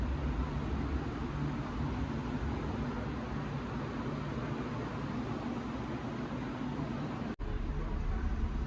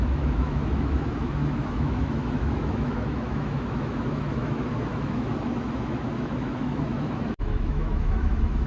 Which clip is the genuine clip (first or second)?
first